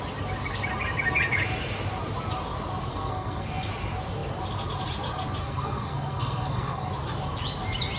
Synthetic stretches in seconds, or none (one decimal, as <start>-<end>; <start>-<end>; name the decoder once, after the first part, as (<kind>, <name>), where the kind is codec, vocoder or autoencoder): 2.9-3.7 (codec, SNAC); 5.4-6.9